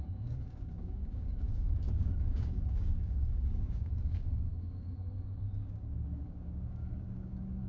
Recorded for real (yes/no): no